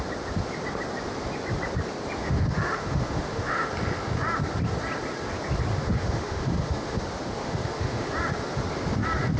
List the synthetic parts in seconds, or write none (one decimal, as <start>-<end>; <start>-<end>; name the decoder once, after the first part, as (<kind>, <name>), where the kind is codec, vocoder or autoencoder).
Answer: 2.2-3.7 (autoencoder, DAC-VAE); 5.7-7.0; 7.4-8.1